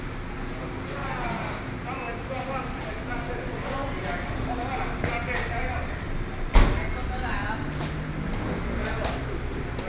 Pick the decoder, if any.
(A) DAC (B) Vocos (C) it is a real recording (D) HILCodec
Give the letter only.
C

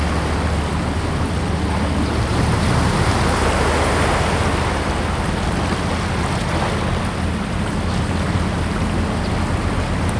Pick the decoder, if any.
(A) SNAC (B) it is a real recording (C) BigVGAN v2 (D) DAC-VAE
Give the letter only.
B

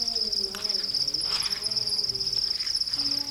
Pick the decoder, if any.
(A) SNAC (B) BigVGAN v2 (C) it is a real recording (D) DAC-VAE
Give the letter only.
C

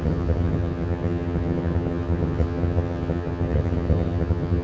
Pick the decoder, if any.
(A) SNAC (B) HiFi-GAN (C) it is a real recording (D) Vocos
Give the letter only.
B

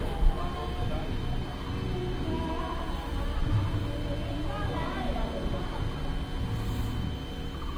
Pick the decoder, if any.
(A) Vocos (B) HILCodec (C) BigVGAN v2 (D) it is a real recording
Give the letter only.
D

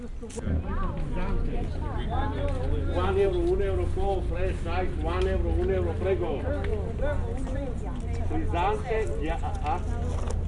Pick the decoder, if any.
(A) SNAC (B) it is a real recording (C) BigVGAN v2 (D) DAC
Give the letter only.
B